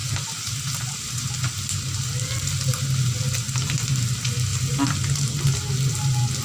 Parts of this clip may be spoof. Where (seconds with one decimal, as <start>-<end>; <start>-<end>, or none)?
0.0-1.3